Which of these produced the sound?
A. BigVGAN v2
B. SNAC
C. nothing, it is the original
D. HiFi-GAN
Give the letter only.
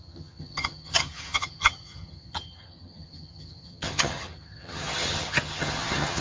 D